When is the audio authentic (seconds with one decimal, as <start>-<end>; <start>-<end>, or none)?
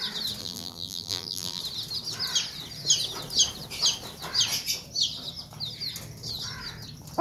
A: 0.0-0.4; 1.6-7.2